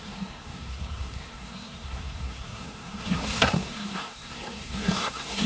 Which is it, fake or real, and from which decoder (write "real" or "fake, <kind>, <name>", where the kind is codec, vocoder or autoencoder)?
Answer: fake, codec, SNAC